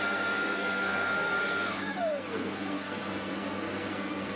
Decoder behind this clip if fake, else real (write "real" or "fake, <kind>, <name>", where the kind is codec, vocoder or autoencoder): fake, codec, SNAC